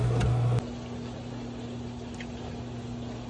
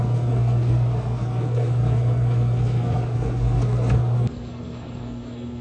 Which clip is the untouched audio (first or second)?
first